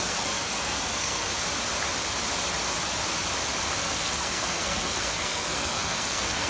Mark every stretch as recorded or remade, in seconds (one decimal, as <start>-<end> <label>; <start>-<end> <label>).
0.0-1.3 remade; 1.3-3.8 recorded; 3.8-6.5 remade